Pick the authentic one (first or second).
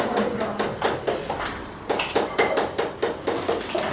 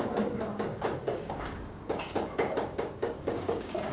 first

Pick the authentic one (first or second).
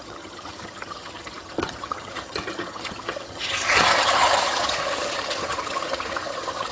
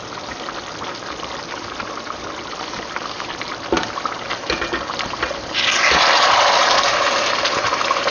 second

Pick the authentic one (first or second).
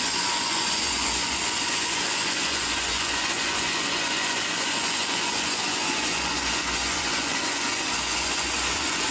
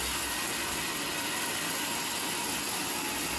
second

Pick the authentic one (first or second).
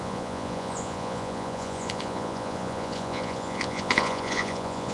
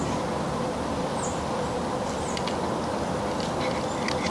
second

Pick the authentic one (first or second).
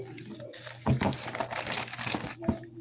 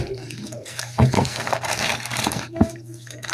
first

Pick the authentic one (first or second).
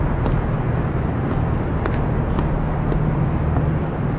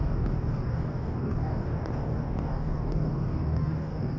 first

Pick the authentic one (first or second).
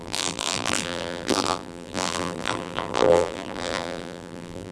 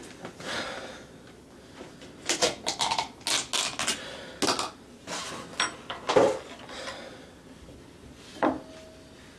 second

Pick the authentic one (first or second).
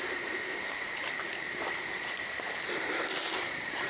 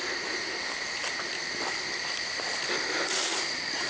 second